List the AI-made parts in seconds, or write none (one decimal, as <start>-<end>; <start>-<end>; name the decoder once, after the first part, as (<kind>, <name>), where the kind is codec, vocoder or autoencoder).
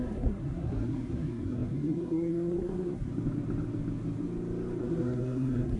0.0-3.1 (codec, SNAC); 4.8-5.8